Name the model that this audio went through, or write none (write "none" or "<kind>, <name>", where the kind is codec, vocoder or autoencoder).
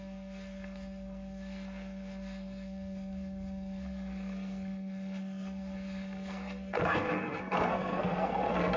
codec, SNAC